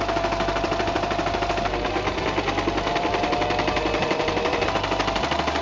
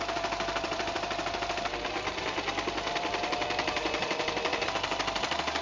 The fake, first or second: second